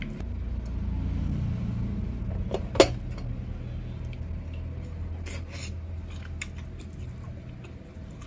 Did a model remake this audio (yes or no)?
no